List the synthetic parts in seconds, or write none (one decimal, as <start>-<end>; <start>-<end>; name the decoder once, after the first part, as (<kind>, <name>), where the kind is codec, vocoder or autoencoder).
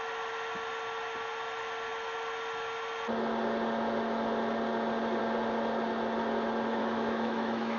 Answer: 6.8-7.8 (autoencoder, DAC-VAE)